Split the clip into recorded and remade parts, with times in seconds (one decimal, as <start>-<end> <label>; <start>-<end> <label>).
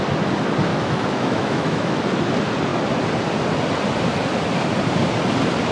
0.0-0.7 recorded; 0.7-2.0 remade; 2.0-5.7 recorded